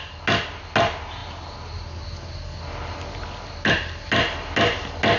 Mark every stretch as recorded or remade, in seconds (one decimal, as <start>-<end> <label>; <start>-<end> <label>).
0.0-5.2 recorded